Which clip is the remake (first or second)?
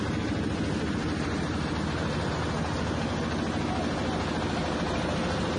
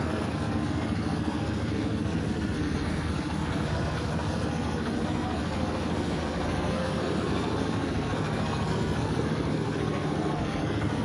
second